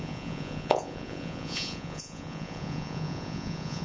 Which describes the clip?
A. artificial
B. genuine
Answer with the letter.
A